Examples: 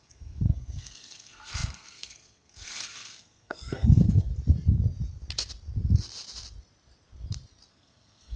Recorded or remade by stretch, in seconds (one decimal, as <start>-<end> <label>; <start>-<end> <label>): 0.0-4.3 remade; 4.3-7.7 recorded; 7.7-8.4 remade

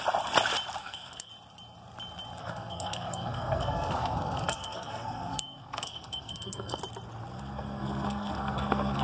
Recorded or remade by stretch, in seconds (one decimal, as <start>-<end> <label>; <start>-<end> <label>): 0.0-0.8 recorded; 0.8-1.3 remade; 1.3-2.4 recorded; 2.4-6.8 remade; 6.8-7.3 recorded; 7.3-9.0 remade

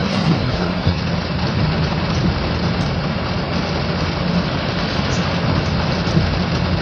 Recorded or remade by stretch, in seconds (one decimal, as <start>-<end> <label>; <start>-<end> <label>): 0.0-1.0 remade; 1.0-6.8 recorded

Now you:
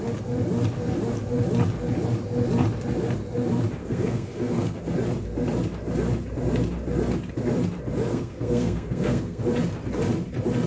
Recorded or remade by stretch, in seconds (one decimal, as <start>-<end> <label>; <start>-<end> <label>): 0.0-3.8 recorded; 3.8-4.8 remade; 4.8-8.1 recorded; 8.1-9.4 remade; 9.4-10.7 recorded

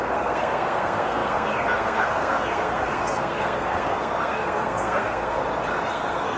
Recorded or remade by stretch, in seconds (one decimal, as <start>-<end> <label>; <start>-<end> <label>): 0.0-5.4 remade; 5.4-5.9 recorded; 5.9-6.4 remade